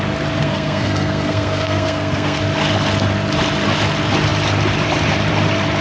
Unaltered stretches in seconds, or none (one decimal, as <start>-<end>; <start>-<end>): 0.0-0.4; 2.4-5.8